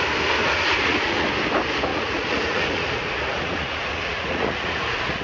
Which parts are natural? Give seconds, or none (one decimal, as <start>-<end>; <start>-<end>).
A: 0.0-0.4; 1.3-1.9